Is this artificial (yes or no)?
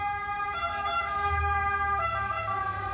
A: yes